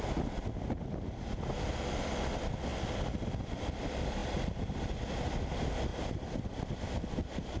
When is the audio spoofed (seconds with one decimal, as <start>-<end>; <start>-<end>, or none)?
5.9-6.7